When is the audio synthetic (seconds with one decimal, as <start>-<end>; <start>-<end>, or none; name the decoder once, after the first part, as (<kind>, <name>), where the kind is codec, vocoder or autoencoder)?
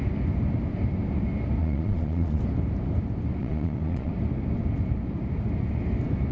1.6-2.4 (vocoder, Vocos); 3.4-4.1